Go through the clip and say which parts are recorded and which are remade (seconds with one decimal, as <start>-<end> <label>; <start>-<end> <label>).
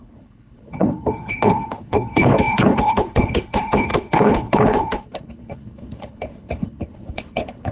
0.0-7.7 remade